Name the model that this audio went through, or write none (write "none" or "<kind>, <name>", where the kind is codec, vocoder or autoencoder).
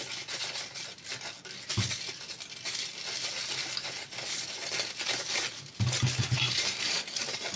none